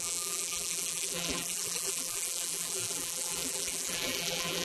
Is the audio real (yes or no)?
no